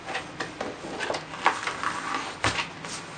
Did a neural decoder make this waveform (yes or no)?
no